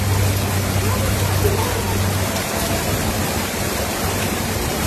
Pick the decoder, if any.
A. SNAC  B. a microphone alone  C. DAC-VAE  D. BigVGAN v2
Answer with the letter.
B